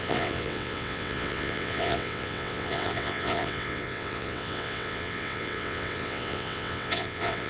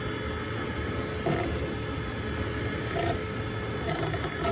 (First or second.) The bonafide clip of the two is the second